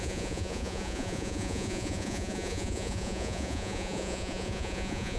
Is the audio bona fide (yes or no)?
no